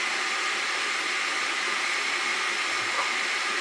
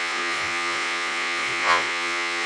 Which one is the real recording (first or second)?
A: first